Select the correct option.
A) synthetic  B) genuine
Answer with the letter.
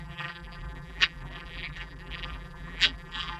A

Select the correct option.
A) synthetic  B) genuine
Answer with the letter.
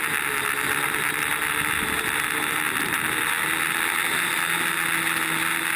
B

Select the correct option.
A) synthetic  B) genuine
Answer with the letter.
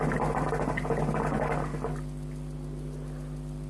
B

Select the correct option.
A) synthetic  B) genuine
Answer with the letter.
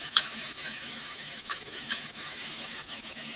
A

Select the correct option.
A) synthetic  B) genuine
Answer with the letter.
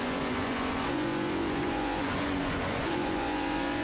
A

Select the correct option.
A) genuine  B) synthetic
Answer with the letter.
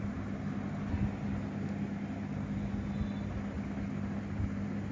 A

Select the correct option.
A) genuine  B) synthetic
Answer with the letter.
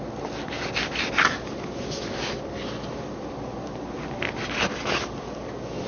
A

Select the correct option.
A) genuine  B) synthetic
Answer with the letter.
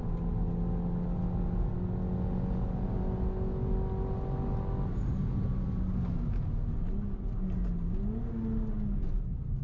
A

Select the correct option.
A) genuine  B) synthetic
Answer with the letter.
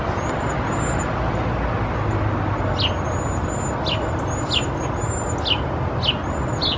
A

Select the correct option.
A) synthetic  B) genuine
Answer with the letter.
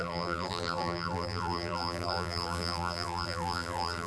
A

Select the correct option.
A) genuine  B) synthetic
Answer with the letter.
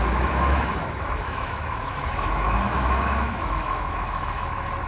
B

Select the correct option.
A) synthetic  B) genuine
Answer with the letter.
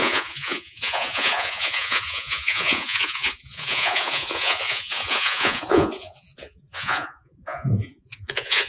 A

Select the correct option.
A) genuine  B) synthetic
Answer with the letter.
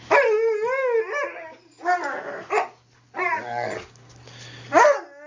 A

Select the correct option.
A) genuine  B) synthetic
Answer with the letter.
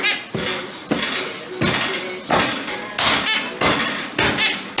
A